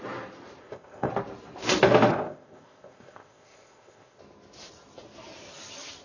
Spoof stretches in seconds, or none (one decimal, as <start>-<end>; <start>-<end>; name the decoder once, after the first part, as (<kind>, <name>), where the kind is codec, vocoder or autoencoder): 0.6-1.1 (codec, ZipCodec); 2.1-4.2